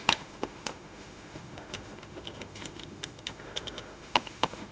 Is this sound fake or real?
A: fake